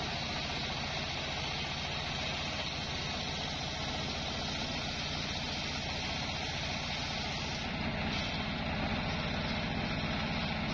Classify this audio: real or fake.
real